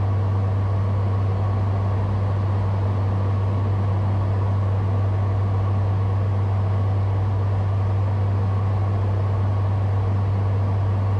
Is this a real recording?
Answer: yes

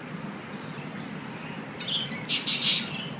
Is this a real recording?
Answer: yes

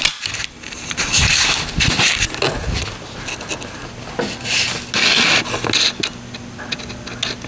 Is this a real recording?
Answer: yes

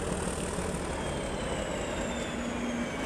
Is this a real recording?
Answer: yes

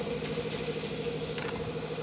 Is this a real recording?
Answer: yes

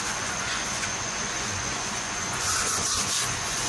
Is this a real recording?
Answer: no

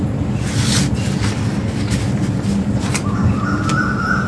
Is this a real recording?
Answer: yes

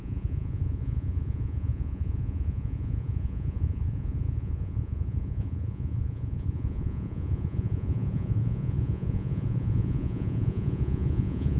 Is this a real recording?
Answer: no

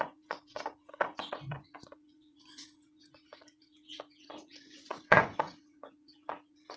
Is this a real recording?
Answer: no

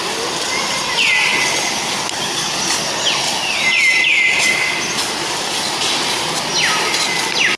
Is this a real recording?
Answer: yes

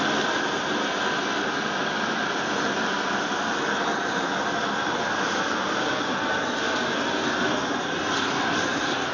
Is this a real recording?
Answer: yes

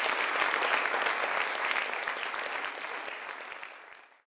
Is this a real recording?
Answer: yes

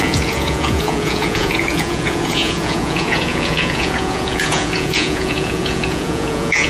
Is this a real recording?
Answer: no